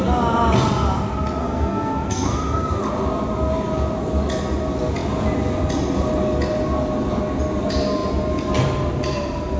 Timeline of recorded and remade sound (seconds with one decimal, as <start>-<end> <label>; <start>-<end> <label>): 0.0-1.4 recorded; 1.4-2.8 remade; 2.8-9.6 recorded